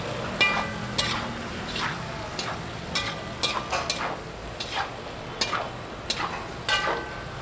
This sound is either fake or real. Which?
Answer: real